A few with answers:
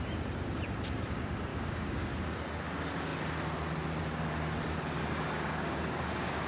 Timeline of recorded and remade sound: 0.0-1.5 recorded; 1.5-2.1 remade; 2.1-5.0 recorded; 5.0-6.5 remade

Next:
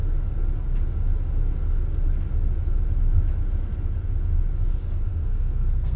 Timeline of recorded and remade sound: 0.0-5.1 recorded; 5.1-6.0 remade

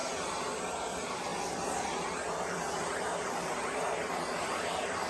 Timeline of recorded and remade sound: 0.0-0.7 recorded; 0.7-1.3 remade; 1.3-4.4 recorded; 4.4-5.1 remade

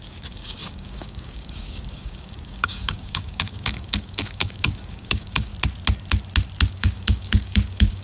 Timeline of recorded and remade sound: 0.0-5.5 remade; 5.5-6.7 recorded; 6.7-8.0 remade